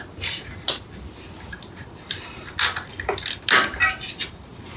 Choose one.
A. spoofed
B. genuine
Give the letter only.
B